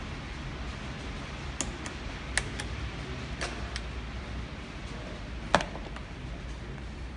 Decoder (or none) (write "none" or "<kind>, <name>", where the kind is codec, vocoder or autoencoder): none